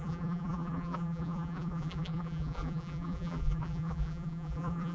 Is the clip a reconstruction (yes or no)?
yes